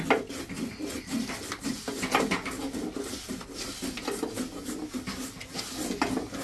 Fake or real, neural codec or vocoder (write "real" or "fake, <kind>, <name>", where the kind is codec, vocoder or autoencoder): real